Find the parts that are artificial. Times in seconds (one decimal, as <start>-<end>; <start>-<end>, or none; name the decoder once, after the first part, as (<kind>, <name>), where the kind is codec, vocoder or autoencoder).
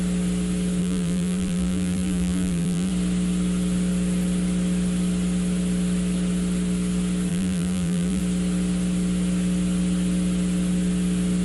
0.8-2.9 (vocoder, BigVGAN v2); 7.3-8.2